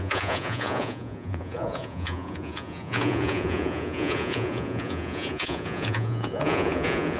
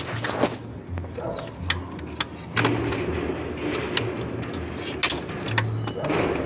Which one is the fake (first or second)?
first